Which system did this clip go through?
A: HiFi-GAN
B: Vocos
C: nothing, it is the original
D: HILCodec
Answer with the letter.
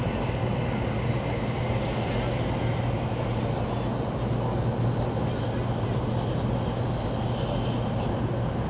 C